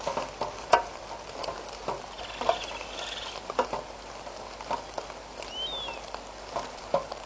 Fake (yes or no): no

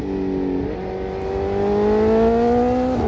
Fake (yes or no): no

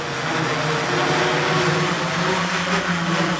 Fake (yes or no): no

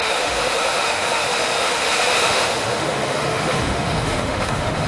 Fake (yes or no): yes